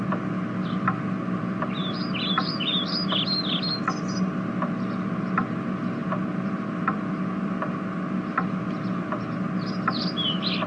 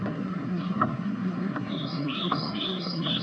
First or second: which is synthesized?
second